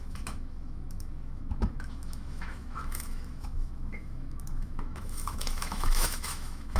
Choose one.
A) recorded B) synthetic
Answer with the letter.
B